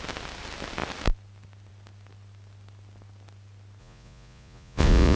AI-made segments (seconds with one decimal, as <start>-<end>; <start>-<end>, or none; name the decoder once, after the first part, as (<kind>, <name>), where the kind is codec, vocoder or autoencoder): 3.8-5.2 (vocoder, Vocos)